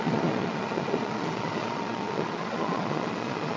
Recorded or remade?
remade